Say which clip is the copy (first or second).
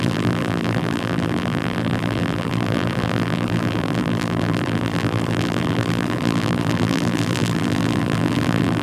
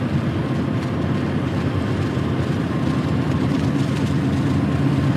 first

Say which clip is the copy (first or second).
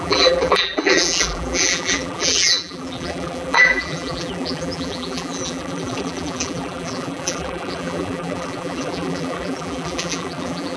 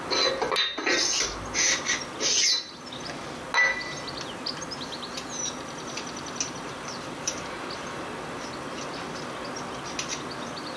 first